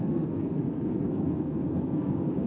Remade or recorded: remade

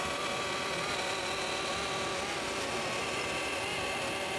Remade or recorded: recorded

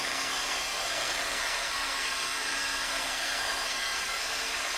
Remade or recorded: remade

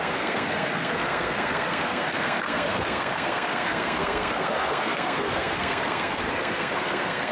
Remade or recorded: remade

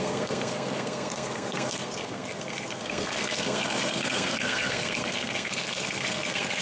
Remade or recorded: remade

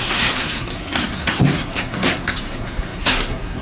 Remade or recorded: remade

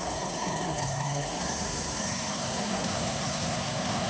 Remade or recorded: remade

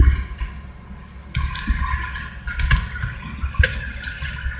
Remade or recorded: recorded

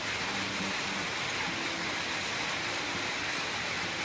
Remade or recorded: recorded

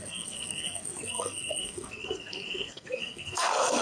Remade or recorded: remade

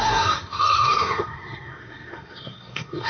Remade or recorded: remade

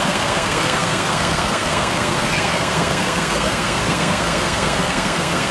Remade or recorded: remade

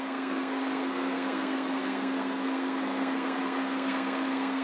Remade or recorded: remade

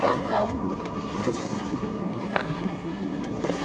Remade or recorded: remade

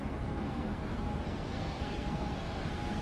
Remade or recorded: remade